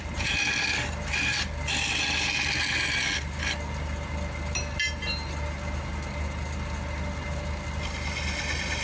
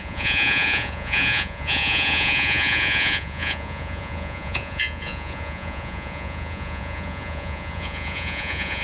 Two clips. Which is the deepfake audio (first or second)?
second